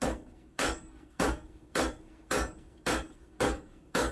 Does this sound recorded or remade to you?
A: remade